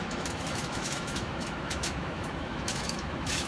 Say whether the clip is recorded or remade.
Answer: remade